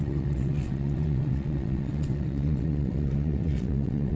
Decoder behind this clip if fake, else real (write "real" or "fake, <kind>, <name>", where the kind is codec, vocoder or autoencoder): fake, vocoder, WaveNeXt